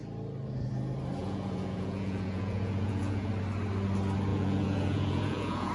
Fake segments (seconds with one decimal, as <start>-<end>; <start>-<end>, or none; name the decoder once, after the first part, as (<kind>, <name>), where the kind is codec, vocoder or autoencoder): 1.2-3.3 (vocoder, Vocos); 4.3-5.7